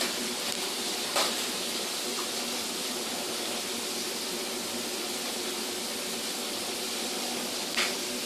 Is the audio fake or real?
real